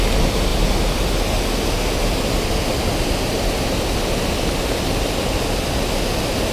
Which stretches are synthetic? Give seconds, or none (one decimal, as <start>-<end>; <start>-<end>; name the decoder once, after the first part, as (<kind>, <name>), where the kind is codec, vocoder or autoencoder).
none